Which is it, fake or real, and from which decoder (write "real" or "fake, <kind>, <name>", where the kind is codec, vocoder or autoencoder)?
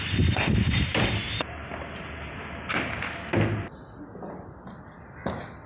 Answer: real